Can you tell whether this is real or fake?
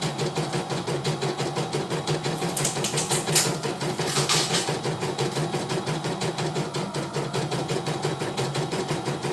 fake